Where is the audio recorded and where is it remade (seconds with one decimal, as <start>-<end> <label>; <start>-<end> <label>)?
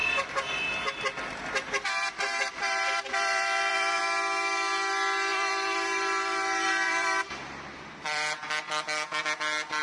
0.0-4.0 remade; 4.0-5.3 recorded; 5.3-8.5 remade; 8.5-9.8 recorded